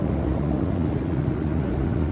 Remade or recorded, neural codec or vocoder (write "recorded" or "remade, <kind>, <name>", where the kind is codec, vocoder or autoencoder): remade, vocoder, Vocos